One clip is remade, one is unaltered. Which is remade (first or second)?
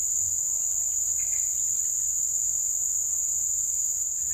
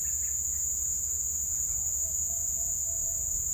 second